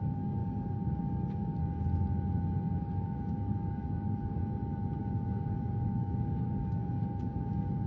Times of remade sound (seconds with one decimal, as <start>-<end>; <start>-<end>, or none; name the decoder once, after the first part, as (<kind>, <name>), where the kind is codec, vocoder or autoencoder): 0.0-1.6 (codec, DAC); 2.8-4.4; 5.0-7.9